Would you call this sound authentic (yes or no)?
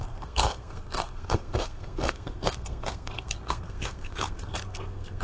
no